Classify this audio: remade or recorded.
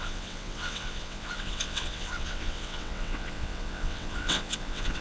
remade